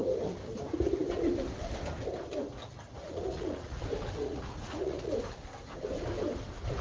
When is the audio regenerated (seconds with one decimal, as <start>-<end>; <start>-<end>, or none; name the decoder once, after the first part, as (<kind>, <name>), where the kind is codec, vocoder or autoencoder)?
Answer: 3.0-3.8 (vocoder, Vocos); 4.2-5.1